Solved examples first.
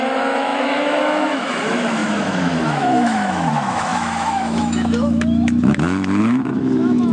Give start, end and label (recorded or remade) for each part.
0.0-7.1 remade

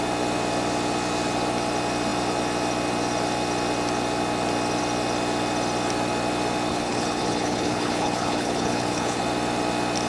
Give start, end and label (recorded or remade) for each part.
0.0-6.7 recorded; 6.7-9.2 remade; 9.2-10.1 recorded

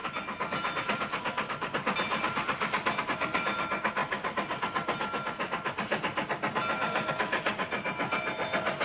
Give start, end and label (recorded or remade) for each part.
0.0-8.8 recorded